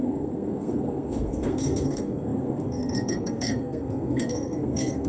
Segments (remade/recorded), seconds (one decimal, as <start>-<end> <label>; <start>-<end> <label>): 0.0-5.1 remade